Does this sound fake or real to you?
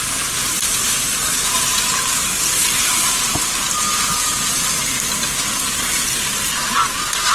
real